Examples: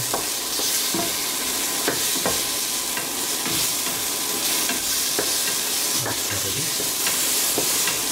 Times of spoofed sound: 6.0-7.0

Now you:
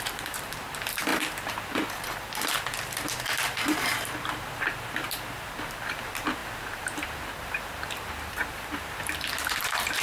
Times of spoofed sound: 0.0-10.0